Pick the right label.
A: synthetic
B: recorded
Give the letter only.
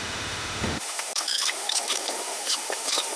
A